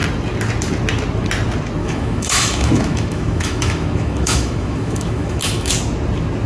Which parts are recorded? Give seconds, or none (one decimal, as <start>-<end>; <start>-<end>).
0.0-1.8; 5.7-6.5